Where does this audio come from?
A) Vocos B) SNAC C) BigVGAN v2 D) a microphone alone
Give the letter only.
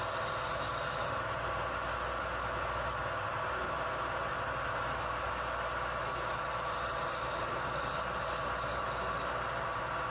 D